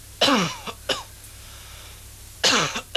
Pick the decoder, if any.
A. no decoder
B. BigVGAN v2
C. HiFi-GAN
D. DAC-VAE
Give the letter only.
A